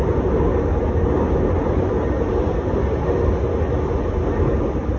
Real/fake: real